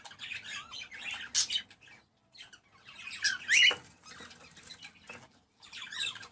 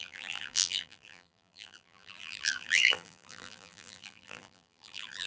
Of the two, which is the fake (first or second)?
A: second